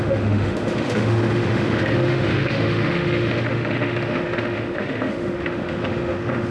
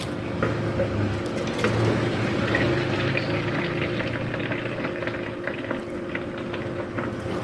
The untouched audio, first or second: second